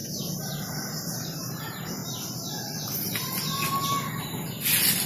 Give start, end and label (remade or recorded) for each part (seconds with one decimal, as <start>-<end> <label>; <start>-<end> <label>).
0.0-2.0 remade; 2.0-5.1 recorded